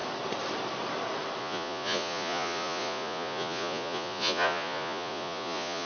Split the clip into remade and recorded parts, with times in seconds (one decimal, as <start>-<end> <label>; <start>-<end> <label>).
0.0-1.4 recorded; 1.4-5.9 remade